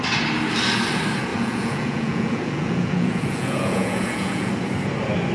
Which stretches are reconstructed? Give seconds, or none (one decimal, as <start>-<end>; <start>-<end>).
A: 1.3-4.5